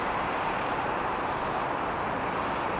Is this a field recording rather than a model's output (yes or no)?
yes